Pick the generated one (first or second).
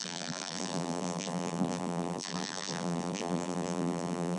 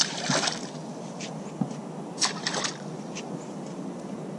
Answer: first